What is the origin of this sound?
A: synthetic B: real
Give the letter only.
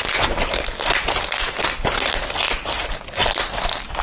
B